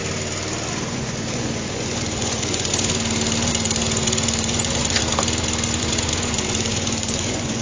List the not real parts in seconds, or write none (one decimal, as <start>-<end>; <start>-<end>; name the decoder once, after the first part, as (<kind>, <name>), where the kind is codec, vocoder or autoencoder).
0.7-2.7 (vocoder, Vocos); 3.5-5.0; 5.8-7.6